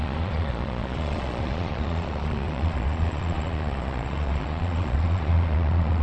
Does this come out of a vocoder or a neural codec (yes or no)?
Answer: yes